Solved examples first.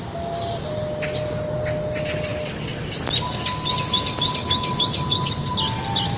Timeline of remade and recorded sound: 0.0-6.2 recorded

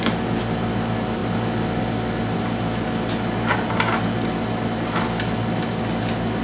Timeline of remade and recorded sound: 0.0-6.4 recorded